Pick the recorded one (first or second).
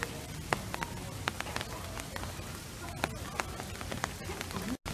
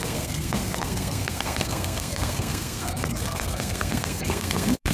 first